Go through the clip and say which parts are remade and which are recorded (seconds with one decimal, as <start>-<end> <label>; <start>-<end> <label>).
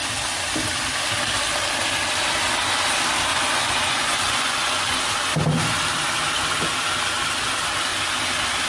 0.0-3.3 recorded; 3.3-5.0 remade; 5.0-8.7 recorded